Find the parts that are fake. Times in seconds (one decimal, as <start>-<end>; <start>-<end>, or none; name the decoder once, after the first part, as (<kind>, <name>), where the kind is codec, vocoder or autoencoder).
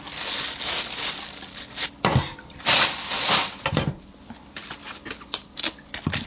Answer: none